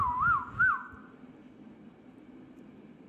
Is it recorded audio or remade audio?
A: remade